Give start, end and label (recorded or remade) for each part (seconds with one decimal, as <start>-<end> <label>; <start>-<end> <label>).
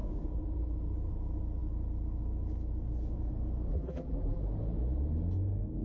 0.0-3.7 recorded; 3.7-4.4 remade; 4.4-5.8 recorded